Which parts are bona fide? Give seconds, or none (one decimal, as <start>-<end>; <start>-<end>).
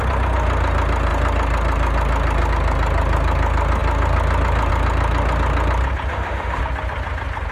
0.0-6.1; 6.6-7.5